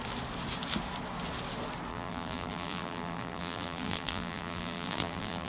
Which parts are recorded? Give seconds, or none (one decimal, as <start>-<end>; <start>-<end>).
0.0-1.9